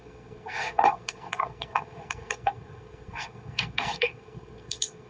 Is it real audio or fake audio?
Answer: fake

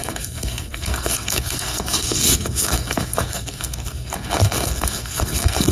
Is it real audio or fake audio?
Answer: fake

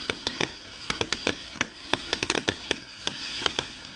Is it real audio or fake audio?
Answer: fake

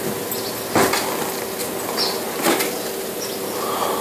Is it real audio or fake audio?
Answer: real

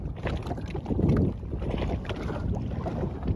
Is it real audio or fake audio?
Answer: real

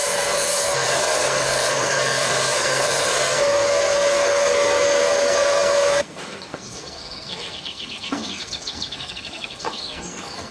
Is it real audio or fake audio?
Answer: fake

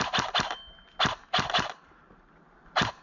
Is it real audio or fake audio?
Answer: real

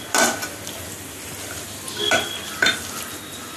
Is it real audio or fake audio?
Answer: real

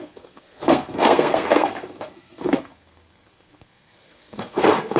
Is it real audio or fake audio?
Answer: fake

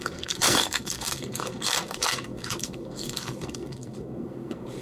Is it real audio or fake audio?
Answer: fake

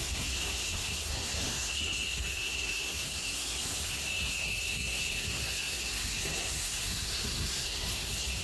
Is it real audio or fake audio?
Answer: fake